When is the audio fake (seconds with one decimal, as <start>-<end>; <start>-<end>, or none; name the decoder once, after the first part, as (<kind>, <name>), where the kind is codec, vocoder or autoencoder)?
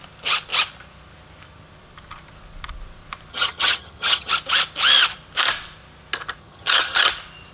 3.3-4.3 (vocoder, HiFi-GAN); 6.4-7.1